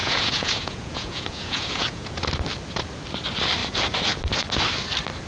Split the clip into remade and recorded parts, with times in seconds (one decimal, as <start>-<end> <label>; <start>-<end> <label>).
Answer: 0.0-2.1 remade; 2.1-5.3 recorded